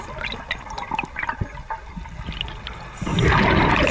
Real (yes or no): yes